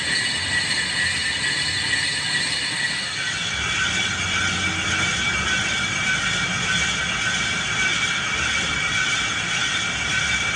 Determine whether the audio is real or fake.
real